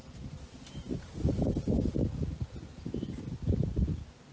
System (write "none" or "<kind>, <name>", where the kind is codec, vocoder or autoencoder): none